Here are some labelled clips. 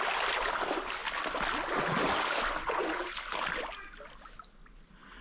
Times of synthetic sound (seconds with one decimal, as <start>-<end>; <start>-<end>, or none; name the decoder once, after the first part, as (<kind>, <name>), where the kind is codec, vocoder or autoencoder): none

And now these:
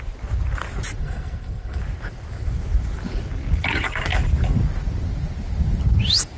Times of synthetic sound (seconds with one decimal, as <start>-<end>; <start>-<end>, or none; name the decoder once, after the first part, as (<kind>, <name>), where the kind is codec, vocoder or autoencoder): 1.0-1.8 (codec, SNAC)

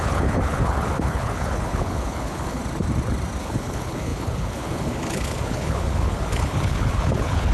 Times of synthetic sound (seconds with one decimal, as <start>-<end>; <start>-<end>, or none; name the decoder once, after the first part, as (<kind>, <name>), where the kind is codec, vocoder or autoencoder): 0.0-2.6 (codec, HILCodec); 3.4-7.5

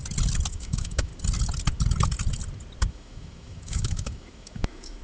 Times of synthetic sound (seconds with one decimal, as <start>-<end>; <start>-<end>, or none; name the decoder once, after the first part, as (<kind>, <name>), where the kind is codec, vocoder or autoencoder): 0.5-1.1 (autoencoder, DAC-VAE); 2.9-5.0

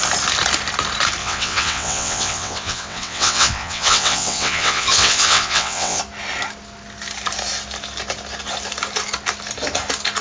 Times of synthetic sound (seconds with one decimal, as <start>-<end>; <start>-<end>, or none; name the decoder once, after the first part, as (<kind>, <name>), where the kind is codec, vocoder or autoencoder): 1.2-6.0 (vocoder, WaveNeXt)

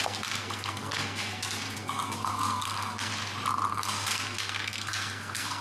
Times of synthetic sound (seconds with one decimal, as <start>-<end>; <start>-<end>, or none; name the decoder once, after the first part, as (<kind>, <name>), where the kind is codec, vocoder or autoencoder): 0.0-3.1 (codec, SNAC); 3.7-5.6

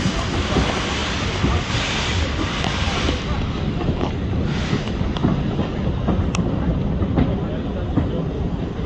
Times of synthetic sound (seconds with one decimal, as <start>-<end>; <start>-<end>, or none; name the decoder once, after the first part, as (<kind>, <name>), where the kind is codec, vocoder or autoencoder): 1.0-1.7 (vocoder, BigVGAN v2); 2.1-3.9

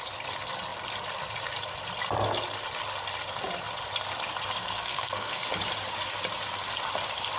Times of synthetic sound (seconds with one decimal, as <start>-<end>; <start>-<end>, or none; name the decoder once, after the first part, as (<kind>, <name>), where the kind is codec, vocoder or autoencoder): 4.6-5.4 (codec, SNAC)